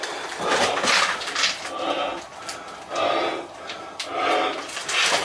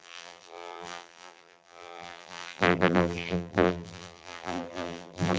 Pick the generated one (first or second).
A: second